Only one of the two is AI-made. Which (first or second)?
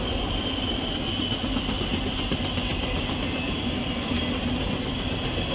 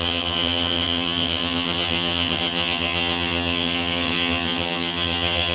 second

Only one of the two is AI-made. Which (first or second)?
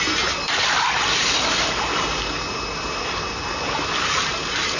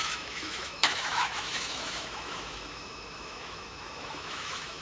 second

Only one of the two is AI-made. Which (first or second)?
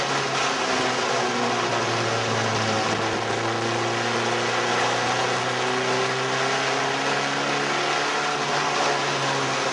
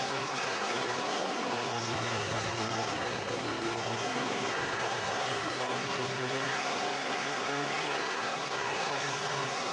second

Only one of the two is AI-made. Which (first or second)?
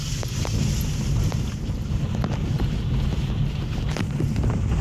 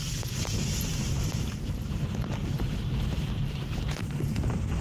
second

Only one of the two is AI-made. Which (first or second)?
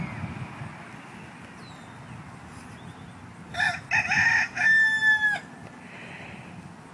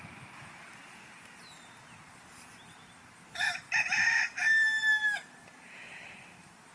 second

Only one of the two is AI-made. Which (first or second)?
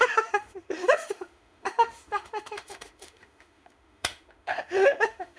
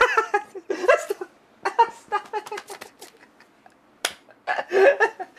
first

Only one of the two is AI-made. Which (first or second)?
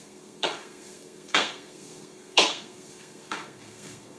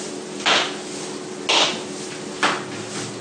first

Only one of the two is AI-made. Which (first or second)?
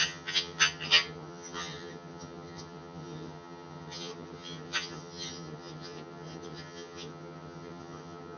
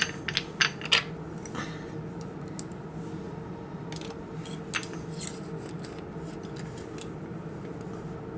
first